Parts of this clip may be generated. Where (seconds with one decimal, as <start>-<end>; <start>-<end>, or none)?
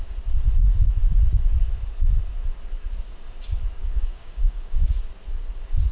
3.8-4.8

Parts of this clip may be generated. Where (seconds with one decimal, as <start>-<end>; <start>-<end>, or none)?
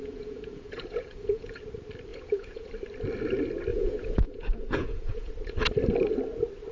0.0-1.6; 2.1-2.7; 3.7-5.3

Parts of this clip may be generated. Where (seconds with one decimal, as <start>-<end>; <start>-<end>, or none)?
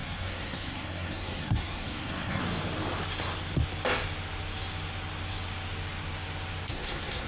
0.0-2.4; 6.7-7.3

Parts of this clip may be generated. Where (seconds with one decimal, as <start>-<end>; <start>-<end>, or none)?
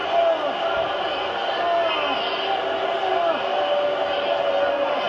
none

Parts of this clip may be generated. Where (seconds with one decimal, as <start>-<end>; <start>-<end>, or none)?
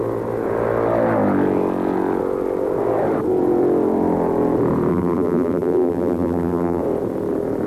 4.9-6.8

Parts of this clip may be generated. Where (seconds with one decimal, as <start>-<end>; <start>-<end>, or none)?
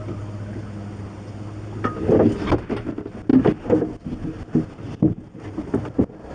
none